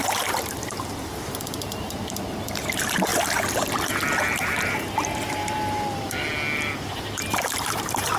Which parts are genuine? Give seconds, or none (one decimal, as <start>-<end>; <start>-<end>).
3.1-4.2; 5.4-6.9